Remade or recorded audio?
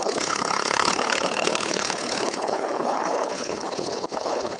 remade